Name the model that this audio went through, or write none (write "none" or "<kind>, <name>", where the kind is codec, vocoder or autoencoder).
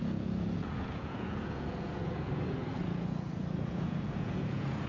vocoder, Vocos